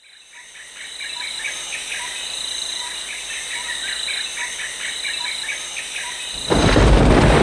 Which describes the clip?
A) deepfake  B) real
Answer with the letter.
B